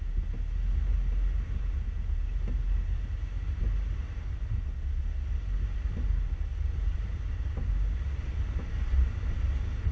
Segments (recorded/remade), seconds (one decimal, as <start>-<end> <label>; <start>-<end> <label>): 0.0-6.5 recorded; 6.5-8.7 remade; 8.7-9.9 recorded